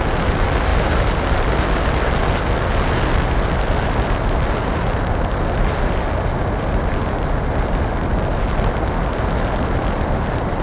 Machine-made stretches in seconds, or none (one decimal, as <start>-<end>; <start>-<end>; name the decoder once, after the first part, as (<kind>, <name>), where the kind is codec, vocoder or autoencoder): none

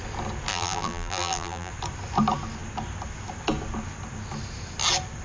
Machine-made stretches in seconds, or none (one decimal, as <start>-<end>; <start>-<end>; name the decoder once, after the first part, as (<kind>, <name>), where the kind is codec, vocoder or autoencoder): 0.5-1.7 (vocoder, BigVGAN v2)

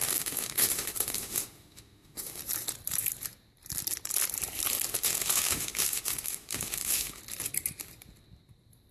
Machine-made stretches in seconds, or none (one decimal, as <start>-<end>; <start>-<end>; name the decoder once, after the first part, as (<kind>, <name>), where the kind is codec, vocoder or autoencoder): 0.0-2.4 (autoencoder, DAC-VAE); 4.9-7.2

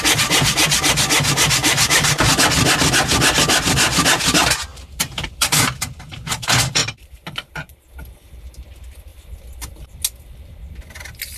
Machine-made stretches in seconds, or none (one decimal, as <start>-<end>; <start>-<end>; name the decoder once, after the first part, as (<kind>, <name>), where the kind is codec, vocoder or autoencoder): 1.6-2.4 (vocoder, BigVGAN v2); 4.7-5.6; 6.8-7.9